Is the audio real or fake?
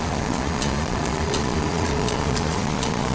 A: fake